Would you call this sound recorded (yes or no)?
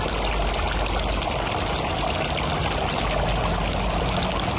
yes